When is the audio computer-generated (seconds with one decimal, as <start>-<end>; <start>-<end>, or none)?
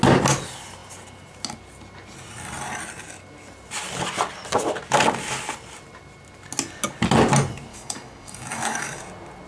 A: 7.7-9.0